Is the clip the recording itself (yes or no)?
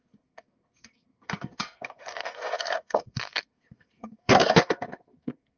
no